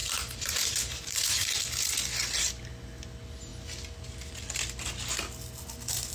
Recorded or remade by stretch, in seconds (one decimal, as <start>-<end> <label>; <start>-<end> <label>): 0.0-1.6 remade; 1.6-6.1 recorded